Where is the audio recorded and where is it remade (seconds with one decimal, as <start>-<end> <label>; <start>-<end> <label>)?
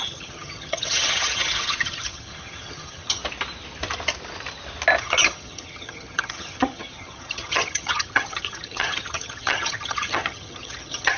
0.0-3.2 remade; 3.2-5.0 recorded; 5.0-11.2 remade